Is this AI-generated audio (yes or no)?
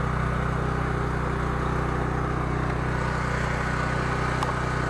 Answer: no